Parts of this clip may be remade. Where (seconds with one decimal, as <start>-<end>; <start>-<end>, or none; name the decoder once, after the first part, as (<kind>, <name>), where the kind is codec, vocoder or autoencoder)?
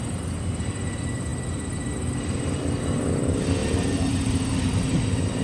3.6-5.0 (vocoder, BigVGAN v2)